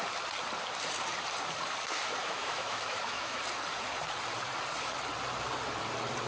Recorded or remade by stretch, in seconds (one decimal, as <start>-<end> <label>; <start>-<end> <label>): 0.0-2.2 recorded; 2.2-3.4 remade; 3.4-6.3 recorded